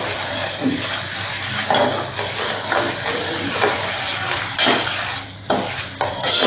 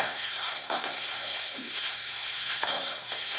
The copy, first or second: second